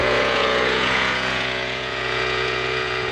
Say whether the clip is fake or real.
fake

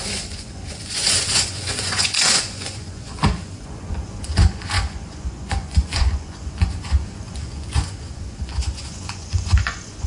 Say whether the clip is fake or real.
fake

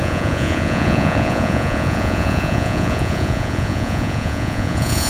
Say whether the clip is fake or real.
fake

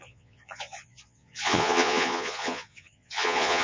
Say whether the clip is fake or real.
fake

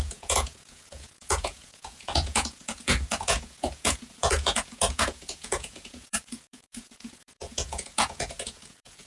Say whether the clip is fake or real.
fake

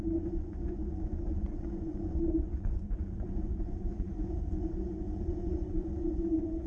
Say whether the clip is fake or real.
fake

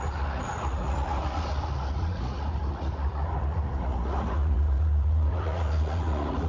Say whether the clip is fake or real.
fake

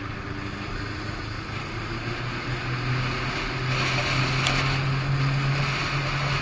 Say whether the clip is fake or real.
real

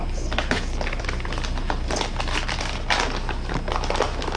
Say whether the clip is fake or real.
real